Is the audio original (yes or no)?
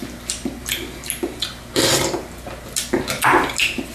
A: yes